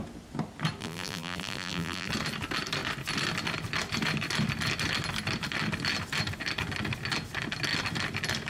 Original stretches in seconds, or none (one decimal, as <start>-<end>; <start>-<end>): 0.0-0.8; 2.1-8.5